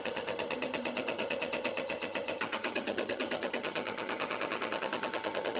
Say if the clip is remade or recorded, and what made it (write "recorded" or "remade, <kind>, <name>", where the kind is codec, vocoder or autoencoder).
remade, vocoder, HiFi-GAN